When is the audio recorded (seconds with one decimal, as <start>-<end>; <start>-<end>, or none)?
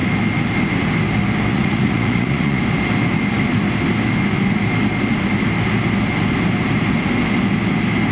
0.0-1.5; 2.6-8.1